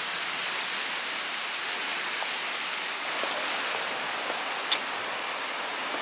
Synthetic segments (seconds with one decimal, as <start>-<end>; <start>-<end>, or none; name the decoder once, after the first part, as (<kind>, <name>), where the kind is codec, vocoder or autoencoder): none